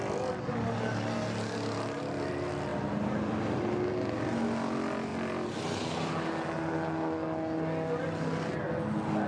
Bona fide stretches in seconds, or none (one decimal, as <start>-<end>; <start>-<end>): 0.0-2.7; 3.9-5.1; 6.1-9.3

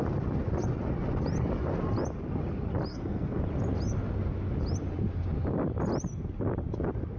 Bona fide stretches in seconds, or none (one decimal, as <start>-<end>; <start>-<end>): 0.0-2.9; 3.4-7.2

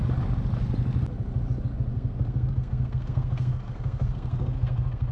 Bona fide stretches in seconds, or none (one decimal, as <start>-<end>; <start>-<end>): 0.0-1.9

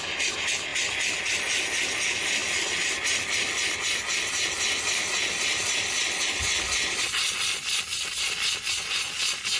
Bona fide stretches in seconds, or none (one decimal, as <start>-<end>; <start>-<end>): 0.0-9.6

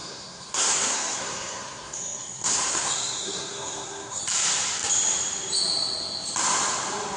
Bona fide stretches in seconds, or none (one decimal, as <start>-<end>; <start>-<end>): 4.2-7.2

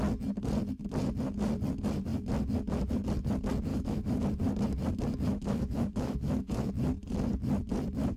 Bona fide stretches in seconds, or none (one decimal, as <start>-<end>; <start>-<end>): 0.0-3.7; 4.2-5.3; 6.7-8.2